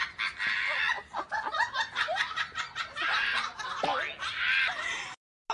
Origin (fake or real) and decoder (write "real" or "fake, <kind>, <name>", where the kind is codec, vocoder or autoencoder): real